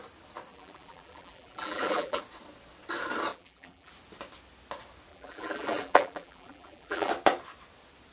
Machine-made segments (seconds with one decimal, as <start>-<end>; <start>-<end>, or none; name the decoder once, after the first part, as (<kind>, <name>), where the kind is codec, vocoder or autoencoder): 0.5-2.2 (vocoder, BigVGAN v2); 3.3-3.9; 5.1-7.1